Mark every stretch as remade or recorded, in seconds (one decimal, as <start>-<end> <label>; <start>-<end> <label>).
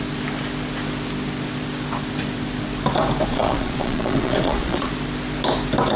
0.0-3.3 recorded; 3.3-4.9 remade; 4.9-6.0 recorded